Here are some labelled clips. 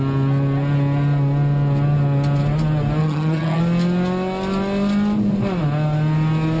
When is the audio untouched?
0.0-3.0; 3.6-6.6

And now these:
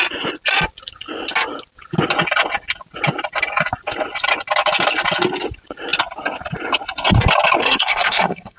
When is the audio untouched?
0.0-7.6

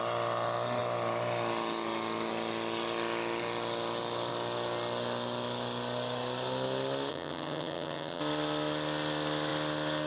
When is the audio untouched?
0.0-7.1; 8.2-10.1